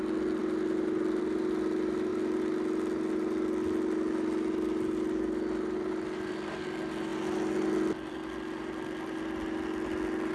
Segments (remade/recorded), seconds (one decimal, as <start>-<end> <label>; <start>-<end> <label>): 0.0-10.3 recorded